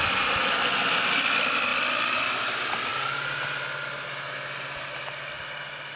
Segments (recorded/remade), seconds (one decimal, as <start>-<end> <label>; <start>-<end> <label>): 0.0-6.0 recorded